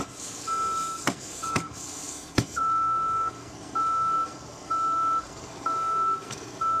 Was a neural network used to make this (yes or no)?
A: yes